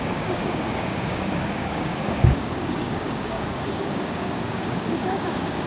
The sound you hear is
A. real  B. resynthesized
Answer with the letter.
B